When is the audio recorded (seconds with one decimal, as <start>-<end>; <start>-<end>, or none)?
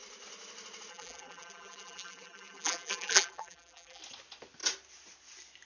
0.0-0.9; 4.0-5.7